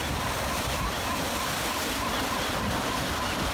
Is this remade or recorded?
recorded